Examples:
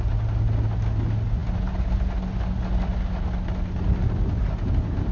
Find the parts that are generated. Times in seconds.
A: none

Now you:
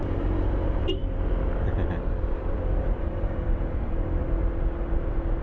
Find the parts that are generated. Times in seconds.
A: 0.0-1.0 (vocoder, BigVGAN v2); 3.0-5.4